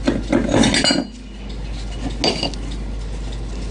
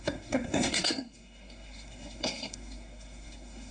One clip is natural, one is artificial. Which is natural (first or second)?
first